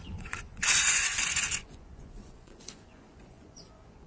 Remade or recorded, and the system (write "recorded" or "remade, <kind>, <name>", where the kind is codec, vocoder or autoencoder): remade, vocoder, Vocos